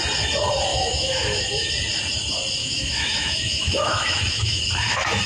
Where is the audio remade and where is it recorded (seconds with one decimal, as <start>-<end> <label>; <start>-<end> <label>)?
0.0-0.7 recorded; 0.7-1.7 remade; 1.7-2.6 recorded; 2.6-4.6 remade; 4.6-5.3 recorded